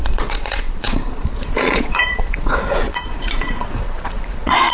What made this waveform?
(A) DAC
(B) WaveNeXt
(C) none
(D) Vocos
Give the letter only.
D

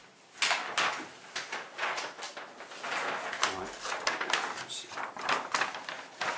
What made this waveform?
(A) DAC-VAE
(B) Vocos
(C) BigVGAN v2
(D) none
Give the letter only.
D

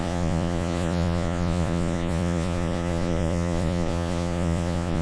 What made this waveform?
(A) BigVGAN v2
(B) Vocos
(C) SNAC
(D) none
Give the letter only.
B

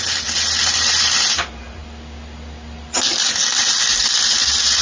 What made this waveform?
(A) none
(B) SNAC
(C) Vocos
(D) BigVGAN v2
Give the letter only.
A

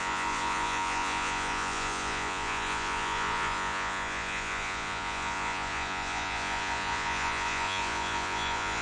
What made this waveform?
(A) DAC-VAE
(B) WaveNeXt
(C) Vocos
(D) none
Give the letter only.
C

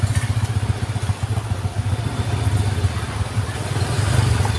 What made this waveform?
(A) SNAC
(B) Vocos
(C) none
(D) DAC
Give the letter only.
C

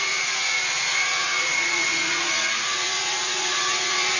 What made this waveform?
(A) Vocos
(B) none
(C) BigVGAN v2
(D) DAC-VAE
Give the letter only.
A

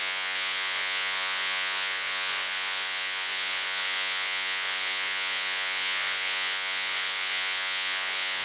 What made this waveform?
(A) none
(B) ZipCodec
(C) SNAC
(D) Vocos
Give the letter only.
D